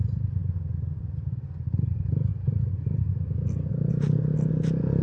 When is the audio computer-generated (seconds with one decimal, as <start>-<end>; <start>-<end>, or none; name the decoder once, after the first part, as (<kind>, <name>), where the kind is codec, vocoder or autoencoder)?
none